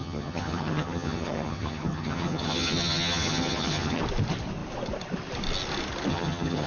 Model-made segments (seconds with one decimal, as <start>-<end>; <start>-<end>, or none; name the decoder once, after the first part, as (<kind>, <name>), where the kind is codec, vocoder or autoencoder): 0.0-4.0 (vocoder, HiFi-GAN); 6.1-6.7